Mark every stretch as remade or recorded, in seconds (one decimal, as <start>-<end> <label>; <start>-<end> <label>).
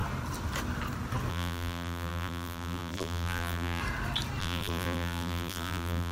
0.0-1.3 recorded; 1.3-3.8 remade; 3.8-4.4 recorded; 4.4-6.1 remade